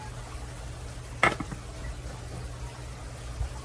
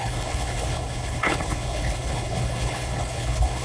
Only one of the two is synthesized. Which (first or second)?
second